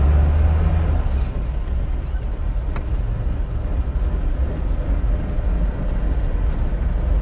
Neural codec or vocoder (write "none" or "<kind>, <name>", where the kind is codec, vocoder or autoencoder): none